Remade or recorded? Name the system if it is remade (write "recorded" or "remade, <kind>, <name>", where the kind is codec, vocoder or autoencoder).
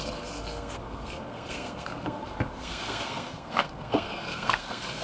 remade, codec, SNAC